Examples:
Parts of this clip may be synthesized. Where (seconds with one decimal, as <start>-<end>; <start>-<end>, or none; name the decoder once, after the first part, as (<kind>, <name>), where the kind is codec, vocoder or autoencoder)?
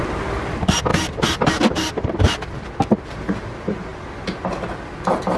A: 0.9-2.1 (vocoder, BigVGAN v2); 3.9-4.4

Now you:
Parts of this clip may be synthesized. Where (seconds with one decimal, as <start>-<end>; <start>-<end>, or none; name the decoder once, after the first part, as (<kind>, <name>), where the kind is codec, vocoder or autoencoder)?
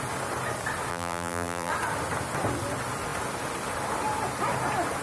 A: 0.9-1.7 (vocoder, BigVGAN v2)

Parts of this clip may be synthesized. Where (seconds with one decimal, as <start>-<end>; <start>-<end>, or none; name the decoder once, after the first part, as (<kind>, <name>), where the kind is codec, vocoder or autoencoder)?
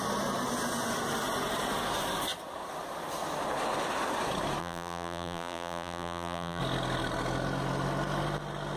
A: 4.6-6.6 (vocoder, BigVGAN v2)